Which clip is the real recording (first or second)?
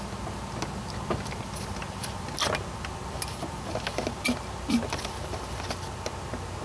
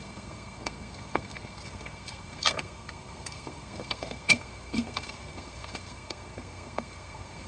first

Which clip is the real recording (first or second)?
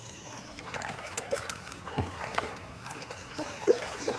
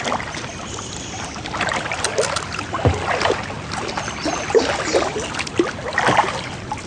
second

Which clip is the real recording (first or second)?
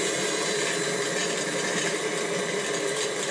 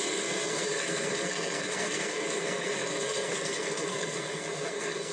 first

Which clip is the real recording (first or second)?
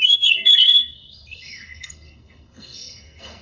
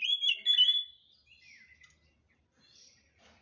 second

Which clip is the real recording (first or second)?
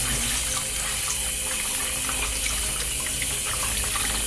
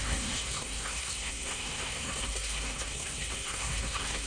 first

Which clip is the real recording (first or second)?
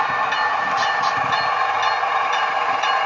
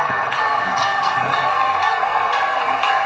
first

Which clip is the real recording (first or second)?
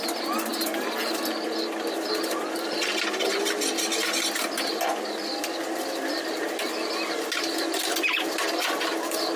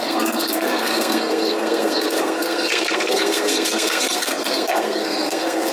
first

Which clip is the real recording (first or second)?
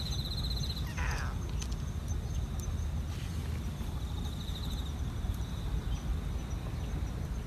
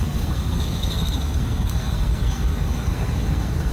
first